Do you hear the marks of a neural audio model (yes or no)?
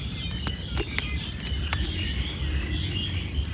no